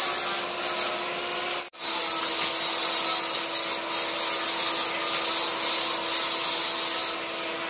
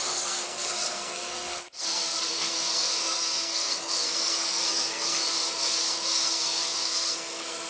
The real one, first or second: first